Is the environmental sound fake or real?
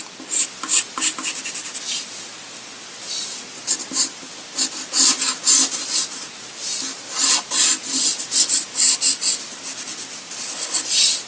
real